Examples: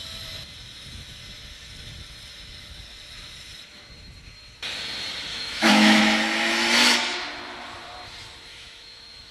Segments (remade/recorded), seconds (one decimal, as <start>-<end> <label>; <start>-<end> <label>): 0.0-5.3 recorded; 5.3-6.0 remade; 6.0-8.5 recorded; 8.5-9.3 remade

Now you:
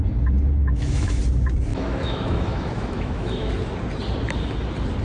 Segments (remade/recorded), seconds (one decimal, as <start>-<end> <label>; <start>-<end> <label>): 0.0-0.6 recorded; 0.6-1.2 remade; 1.2-1.7 recorded; 1.7-3.5 remade; 3.5-5.0 recorded

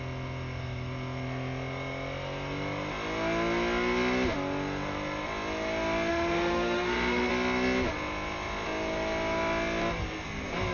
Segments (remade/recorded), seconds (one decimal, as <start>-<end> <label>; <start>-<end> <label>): 0.0-6.1 recorded; 6.1-7.3 remade; 7.3-10.7 recorded

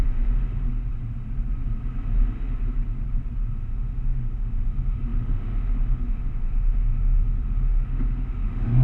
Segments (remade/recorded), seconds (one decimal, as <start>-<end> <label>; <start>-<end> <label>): 0.0-0.7 remade; 0.7-3.5 recorded; 3.5-8.8 remade

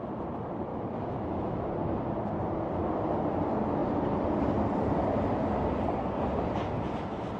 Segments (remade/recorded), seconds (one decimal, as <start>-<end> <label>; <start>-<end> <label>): 0.0-0.7 recorded; 0.7-1.7 remade; 1.7-7.4 recorded

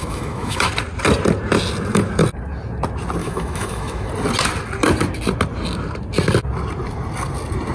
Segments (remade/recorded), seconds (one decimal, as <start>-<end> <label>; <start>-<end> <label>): 0.0-0.7 remade; 0.7-3.2 recorded; 3.2-4.1 remade; 4.1-7.7 recorded

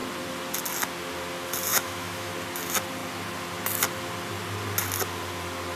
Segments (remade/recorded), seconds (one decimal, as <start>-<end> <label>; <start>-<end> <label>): 0.0-1.7 recorded; 1.7-2.3 remade; 2.3-5.8 recorded